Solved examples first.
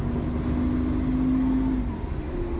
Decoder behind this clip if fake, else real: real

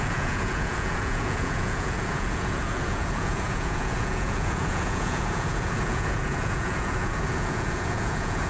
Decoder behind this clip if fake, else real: fake, vocoder, Vocos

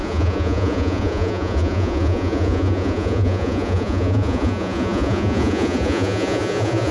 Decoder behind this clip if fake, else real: fake, vocoder, Vocos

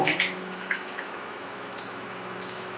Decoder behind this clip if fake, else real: fake, autoencoder, DAC-VAE